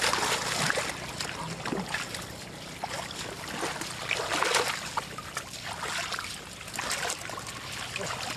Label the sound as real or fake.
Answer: real